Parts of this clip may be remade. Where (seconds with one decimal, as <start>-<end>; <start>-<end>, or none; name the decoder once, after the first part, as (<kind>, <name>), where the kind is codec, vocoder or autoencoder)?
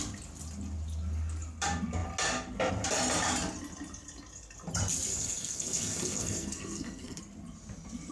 5.1-7.2 (codec, SNAC)